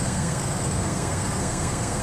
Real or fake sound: fake